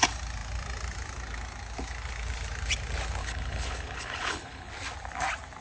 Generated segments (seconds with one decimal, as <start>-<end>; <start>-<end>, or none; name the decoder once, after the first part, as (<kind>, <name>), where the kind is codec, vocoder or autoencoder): 3.2-4.7 (codec, HILCodec)